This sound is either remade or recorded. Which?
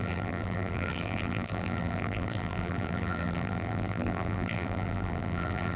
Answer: remade